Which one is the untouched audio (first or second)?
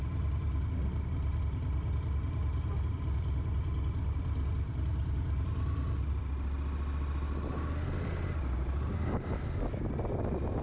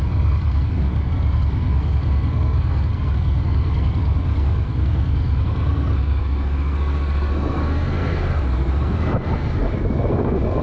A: first